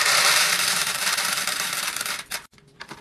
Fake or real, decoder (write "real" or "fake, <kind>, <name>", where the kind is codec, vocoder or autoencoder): fake, vocoder, BigVGAN v2